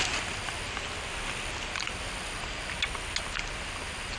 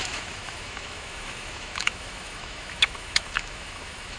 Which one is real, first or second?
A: first